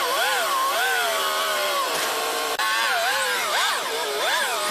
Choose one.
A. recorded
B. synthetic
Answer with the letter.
B